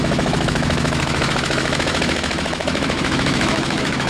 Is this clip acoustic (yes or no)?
no